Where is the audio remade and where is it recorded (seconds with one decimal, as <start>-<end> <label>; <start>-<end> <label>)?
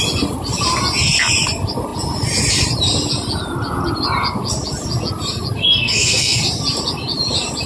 0.0-5.6 recorded; 5.6-6.4 remade; 6.4-7.7 recorded